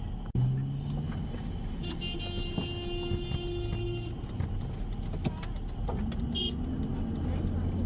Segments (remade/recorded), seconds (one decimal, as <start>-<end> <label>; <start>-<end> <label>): 0.0-7.9 recorded